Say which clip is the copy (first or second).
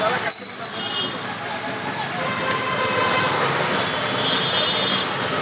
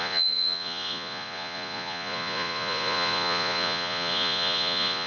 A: second